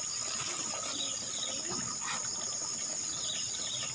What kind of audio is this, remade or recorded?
recorded